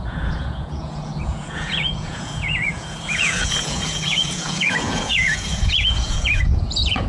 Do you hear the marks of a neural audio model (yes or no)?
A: yes